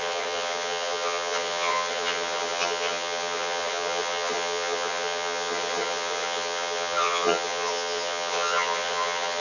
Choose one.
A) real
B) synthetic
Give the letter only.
B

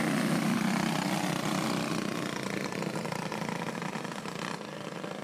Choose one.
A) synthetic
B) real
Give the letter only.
B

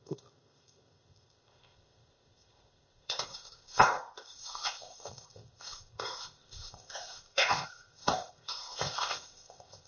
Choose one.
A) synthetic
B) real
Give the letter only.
A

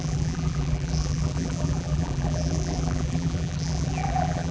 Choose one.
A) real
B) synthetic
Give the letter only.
B